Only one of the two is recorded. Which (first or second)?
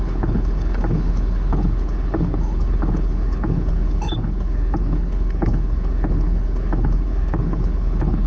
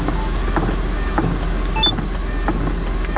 second